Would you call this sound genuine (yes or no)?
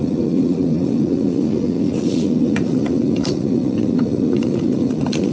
no